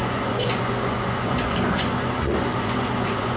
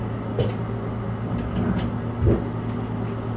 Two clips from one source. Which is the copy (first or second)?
first